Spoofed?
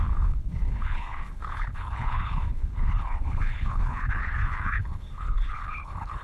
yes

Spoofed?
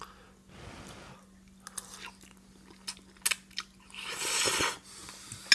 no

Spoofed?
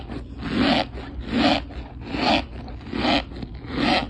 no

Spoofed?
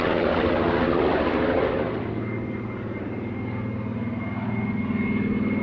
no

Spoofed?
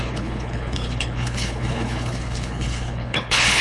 yes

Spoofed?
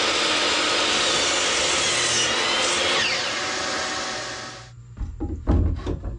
no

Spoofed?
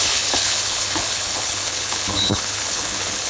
yes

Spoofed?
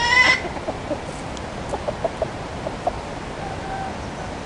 no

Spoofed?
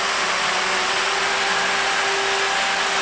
no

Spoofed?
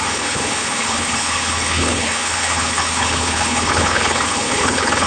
yes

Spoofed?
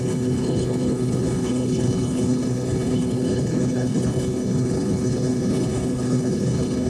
yes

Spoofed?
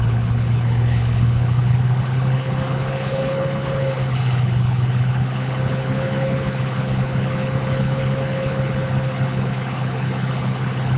yes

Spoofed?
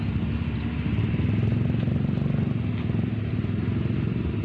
no